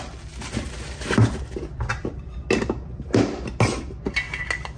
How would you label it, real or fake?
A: real